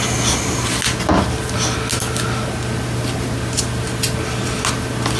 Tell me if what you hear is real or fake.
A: real